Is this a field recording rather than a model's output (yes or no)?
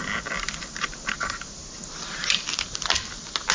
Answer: yes